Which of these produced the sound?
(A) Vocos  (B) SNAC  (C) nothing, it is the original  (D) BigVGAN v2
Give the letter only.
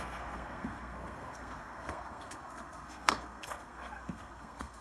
B